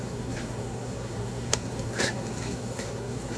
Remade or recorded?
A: remade